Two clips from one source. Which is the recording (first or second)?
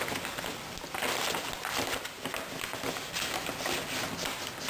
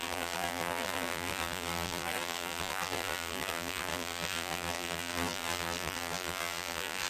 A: first